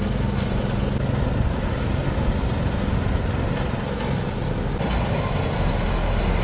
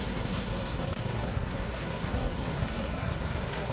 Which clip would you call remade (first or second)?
second